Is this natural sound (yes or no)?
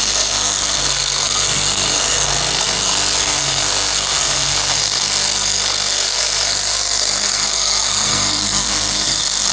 no